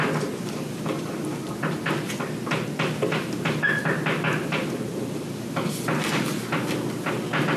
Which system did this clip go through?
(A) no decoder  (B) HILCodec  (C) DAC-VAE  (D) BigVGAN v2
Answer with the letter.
A